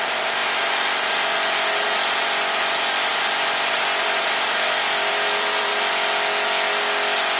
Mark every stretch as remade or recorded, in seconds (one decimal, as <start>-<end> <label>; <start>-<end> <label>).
0.0-0.4 remade; 0.4-2.2 recorded; 2.2-3.1 remade; 3.1-3.7 recorded; 3.7-5.7 remade; 5.7-7.4 recorded